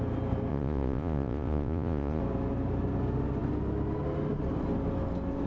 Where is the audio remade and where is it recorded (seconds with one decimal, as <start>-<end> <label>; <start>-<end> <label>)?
0.0-0.5 recorded; 0.5-2.2 remade; 2.2-5.5 recorded